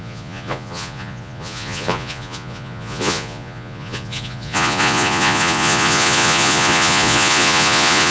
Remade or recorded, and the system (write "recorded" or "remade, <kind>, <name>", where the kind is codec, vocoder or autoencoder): remade, vocoder, Vocos